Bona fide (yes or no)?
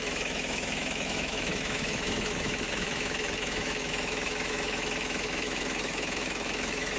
no